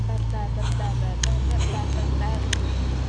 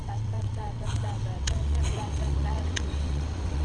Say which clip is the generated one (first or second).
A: second